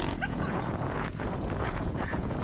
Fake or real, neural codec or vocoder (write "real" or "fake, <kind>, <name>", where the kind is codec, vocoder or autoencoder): fake, vocoder, Vocos